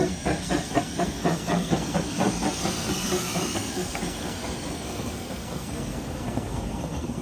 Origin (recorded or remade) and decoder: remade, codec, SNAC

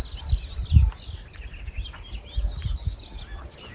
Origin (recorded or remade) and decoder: recorded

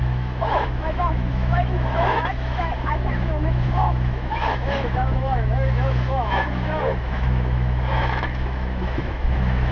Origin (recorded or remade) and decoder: remade, autoencoder, DAC-VAE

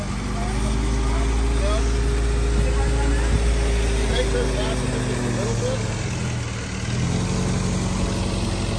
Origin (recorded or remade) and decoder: recorded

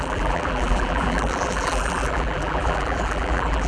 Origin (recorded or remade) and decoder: remade, vocoder, BigVGAN v2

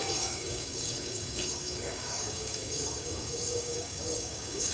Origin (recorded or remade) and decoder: remade, codec, DAC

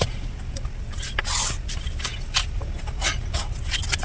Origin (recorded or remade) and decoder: recorded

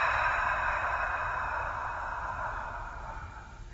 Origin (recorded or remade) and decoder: remade, vocoder, BigVGAN v2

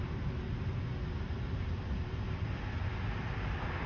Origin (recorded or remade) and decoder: recorded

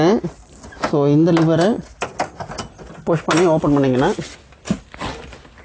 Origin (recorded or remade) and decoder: recorded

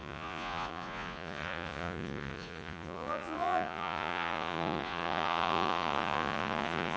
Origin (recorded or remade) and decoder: remade, vocoder, Vocos